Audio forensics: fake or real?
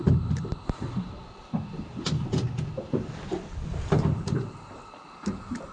real